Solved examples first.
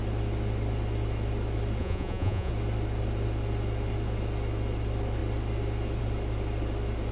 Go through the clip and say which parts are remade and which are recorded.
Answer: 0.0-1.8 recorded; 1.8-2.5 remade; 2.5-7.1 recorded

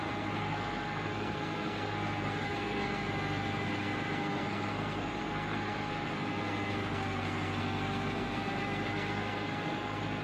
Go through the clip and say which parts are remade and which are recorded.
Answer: 0.0-10.2 remade

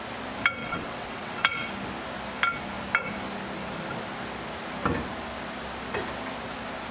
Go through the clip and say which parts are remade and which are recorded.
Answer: 0.0-0.6 recorded; 0.6-1.7 remade; 1.7-6.9 recorded

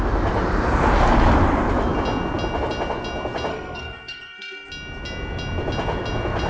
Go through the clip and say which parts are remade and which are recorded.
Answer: 0.0-3.5 recorded; 3.5-4.7 remade; 4.7-6.5 recorded

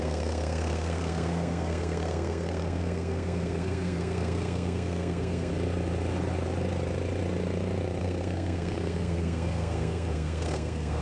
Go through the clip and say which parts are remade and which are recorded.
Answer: 0.0-5.5 remade; 5.5-8.0 recorded; 8.0-11.0 remade

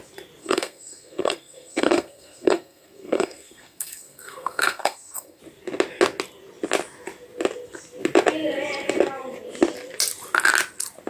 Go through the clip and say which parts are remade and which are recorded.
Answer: 0.0-0.4 recorded; 0.4-5.4 remade; 5.4-11.1 recorded

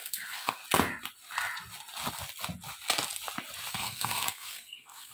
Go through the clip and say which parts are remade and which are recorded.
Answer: 0.0-0.6 remade; 0.6-3.7 recorded; 3.7-5.1 remade

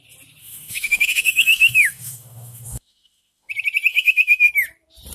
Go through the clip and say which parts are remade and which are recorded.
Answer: 0.0-0.4 recorded; 0.4-3.5 remade; 3.5-3.9 recorded; 3.9-4.5 remade; 4.5-5.1 recorded